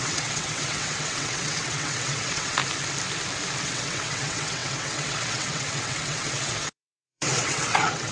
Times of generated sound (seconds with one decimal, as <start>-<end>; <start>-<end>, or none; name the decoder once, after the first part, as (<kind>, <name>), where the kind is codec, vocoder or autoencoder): 0.0-2.6 (vocoder, WaveNeXt); 3.6-8.1